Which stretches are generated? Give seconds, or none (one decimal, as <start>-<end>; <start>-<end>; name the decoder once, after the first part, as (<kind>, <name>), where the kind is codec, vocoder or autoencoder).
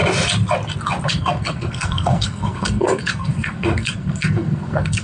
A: 1.1-5.0 (codec, SNAC)